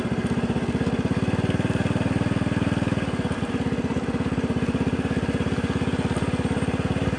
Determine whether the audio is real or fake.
real